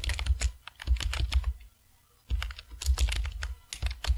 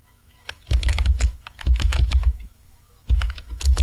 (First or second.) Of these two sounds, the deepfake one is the second